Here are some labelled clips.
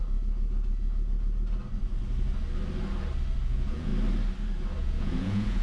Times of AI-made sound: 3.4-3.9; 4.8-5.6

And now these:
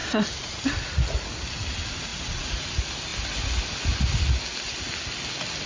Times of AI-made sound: 0.0-0.6; 2.1-2.7

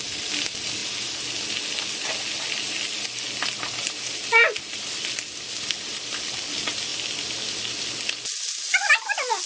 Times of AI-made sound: none